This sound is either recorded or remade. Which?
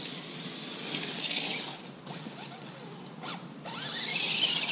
recorded